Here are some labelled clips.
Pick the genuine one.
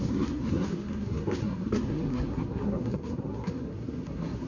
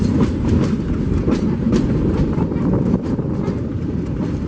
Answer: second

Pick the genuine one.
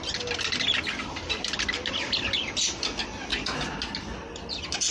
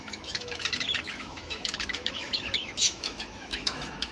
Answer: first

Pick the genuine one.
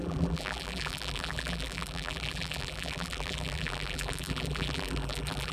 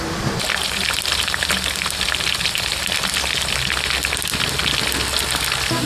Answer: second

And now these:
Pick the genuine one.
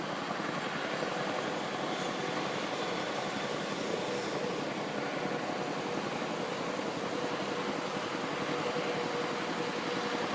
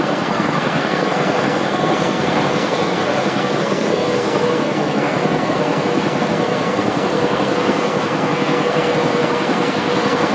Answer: first